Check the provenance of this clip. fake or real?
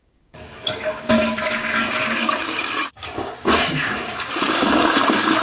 fake